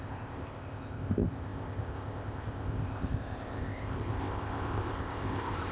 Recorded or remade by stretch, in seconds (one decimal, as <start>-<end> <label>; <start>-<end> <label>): 0.0-5.7 remade